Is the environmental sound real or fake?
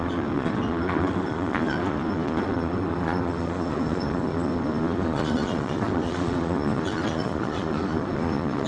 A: fake